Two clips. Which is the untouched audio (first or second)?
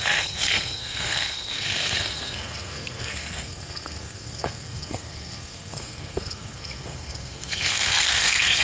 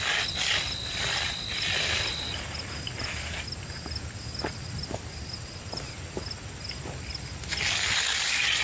second